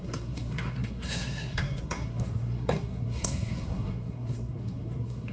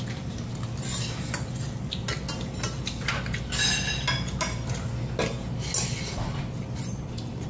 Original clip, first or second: second